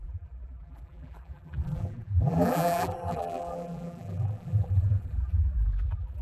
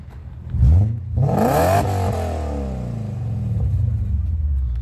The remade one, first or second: first